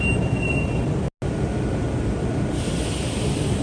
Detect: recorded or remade recorded